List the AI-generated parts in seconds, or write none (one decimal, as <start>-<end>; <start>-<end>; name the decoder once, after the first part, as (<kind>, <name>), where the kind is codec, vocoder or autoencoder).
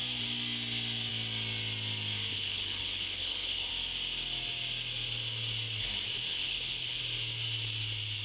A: 2.3-3.7 (codec, HILCodec); 6.3-7.0